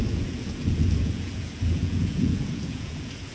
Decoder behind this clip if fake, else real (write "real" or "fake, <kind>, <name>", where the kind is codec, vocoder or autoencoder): fake, vocoder, Vocos